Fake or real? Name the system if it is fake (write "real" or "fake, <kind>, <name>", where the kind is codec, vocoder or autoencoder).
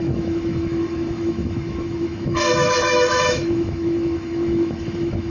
fake, autoencoder, DAC-VAE